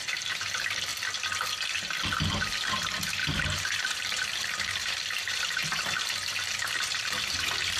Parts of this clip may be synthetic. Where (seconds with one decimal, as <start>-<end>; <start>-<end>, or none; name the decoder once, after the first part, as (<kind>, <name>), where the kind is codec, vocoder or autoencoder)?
0.0-0.9 (vocoder, BigVGAN v2); 2.3-7.8